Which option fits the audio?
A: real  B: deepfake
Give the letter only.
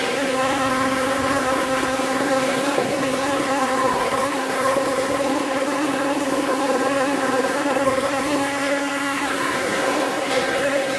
B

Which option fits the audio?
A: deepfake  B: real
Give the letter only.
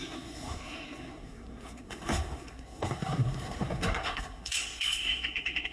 A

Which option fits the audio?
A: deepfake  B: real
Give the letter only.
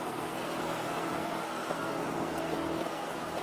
A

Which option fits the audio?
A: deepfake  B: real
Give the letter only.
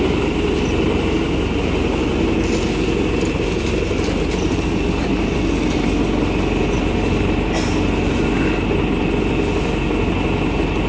B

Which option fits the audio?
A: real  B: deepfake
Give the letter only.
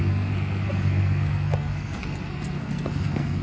B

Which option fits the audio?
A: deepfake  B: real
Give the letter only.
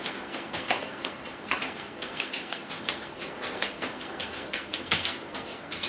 A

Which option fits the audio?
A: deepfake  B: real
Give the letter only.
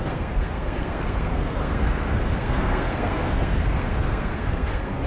A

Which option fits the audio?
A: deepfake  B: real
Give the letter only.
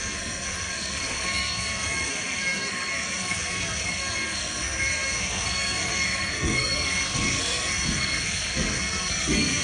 A